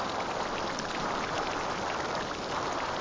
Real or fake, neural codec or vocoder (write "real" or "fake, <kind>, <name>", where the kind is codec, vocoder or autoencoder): real